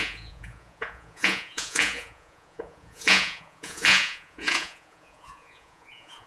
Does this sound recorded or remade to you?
remade